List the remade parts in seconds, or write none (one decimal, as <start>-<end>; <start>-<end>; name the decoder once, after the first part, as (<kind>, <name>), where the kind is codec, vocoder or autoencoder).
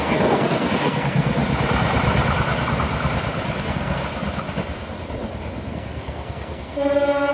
0.0-1.4 (codec, SNAC); 3.6-4.0; 5.7-7.3